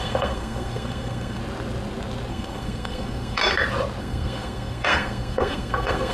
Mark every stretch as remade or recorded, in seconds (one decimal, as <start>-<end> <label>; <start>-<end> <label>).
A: 0.0-1.4 remade; 1.4-2.3 recorded; 2.3-3.4 remade; 3.4-4.0 recorded; 4.0-6.1 remade